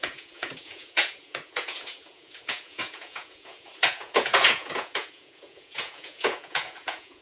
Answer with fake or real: fake